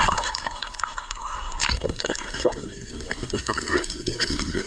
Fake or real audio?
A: fake